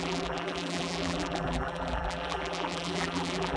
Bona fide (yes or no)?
no